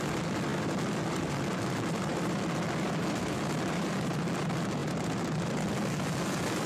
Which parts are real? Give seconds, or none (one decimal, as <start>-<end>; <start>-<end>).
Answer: none